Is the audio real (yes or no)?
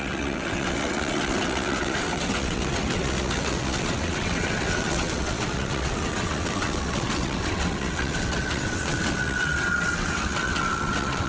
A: no